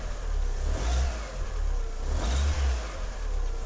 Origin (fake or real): real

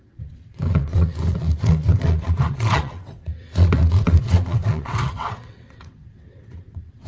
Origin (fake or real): fake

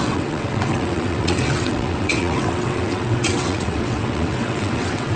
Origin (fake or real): fake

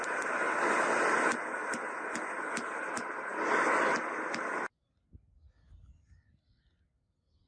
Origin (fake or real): real